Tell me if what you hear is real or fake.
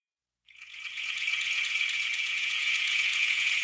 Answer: fake